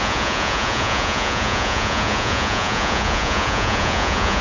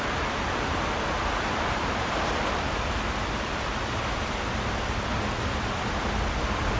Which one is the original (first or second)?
second